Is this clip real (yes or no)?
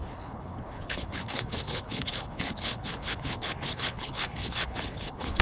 no